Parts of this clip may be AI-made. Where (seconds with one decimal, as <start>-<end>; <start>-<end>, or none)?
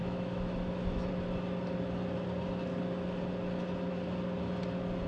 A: 0.0-1.1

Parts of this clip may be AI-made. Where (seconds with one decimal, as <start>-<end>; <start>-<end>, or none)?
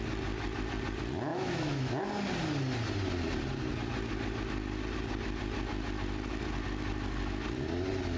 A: 1.3-2.0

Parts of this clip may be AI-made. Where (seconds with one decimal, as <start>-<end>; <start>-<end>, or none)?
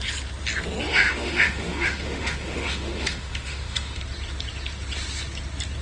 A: 0.9-4.0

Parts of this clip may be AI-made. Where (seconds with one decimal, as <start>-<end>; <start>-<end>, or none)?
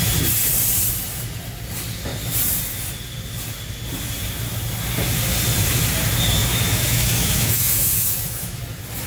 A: 6.4-8.6